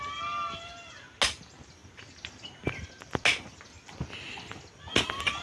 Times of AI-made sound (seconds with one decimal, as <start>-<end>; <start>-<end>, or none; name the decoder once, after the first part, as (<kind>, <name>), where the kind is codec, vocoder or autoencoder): none